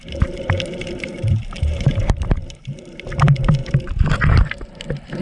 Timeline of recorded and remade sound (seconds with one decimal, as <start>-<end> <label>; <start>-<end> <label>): 0.0-5.2 remade